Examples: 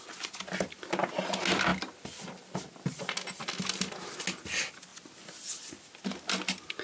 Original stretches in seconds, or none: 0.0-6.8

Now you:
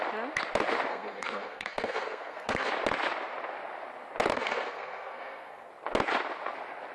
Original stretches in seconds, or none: 0.0-0.9; 2.7-4.3; 5.7-6.9

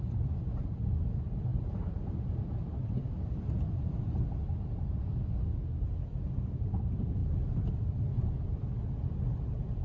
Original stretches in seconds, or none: 0.0-9.8